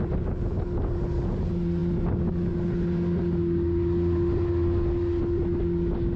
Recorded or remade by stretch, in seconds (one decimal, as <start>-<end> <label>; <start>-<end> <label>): 0.0-6.2 recorded